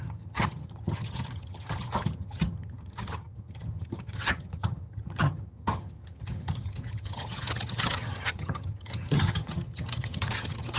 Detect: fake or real fake